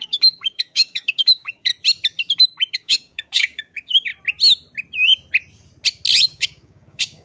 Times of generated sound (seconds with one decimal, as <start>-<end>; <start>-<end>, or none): 0.0-1.7; 2.7-4.1; 6.2-7.2